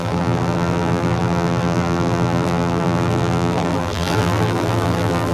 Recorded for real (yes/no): no